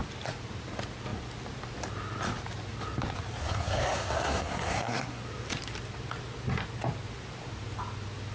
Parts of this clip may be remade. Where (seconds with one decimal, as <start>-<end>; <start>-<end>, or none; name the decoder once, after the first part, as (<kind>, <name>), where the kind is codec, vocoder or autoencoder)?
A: 3.4-5.2 (codec, SNAC)